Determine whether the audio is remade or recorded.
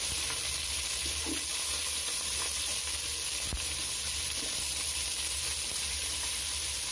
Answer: recorded